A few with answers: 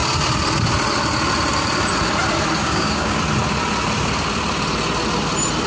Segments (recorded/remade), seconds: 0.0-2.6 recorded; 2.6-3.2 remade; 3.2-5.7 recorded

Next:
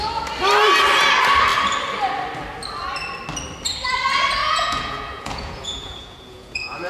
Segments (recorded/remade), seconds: 0.0-4.4 recorded; 4.4-6.9 remade